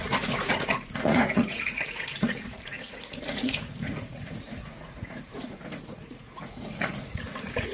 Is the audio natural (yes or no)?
no